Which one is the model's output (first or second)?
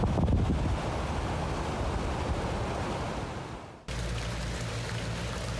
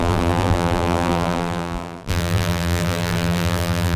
second